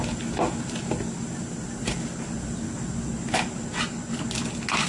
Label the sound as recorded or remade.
recorded